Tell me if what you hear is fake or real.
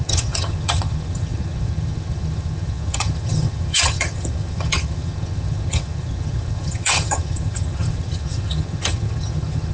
fake